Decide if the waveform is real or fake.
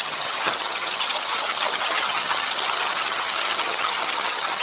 fake